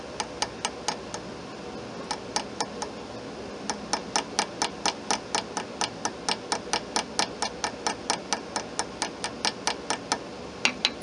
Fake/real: real